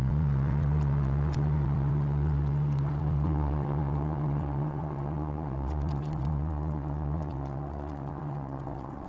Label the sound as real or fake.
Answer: fake